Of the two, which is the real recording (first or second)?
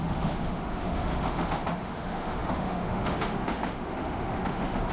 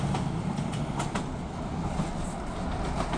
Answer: second